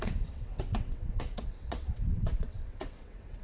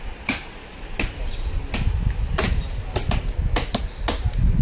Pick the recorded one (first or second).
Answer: second